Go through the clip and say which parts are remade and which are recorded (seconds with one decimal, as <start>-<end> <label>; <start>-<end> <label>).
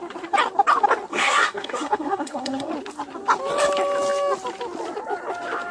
0.0-1.1 recorded; 1.1-2.7 remade; 2.7-5.7 recorded